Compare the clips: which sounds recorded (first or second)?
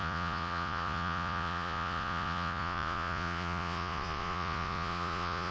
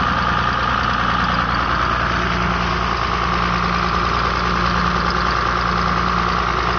second